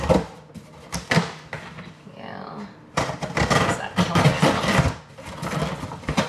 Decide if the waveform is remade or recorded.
recorded